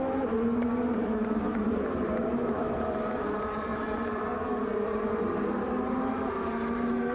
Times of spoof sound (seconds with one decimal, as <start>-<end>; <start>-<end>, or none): 0.0-7.1